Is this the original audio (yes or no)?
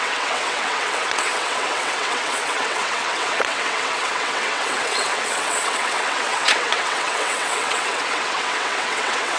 no